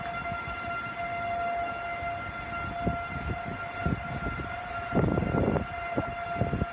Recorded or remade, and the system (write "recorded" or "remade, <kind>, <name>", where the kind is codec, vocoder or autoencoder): recorded